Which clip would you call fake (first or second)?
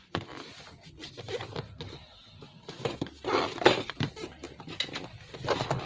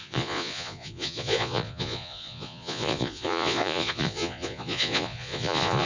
second